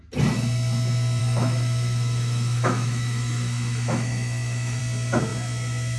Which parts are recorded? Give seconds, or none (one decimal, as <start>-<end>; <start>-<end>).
0.0-1.2; 4.8-6.0